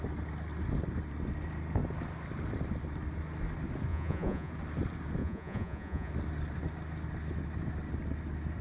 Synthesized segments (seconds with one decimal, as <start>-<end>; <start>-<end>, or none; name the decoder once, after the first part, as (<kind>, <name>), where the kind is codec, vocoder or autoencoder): 3.9-4.5 (vocoder, Vocos); 5.2-6.1